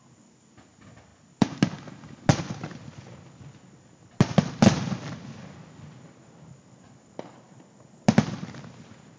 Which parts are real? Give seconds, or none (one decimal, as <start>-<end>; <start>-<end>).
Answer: 0.0-9.2